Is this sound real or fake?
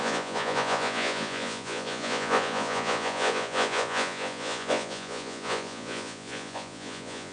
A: fake